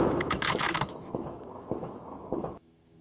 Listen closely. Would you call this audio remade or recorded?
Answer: remade